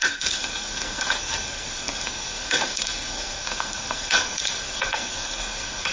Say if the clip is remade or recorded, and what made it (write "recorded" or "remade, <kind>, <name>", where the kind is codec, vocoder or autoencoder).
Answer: remade, codec, SNAC